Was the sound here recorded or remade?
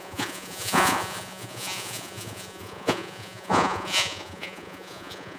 remade